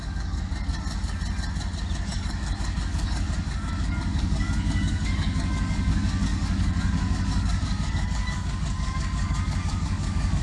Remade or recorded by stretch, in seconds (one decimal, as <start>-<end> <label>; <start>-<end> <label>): 0.0-0.5 remade; 0.5-2.1 recorded; 2.1-10.4 remade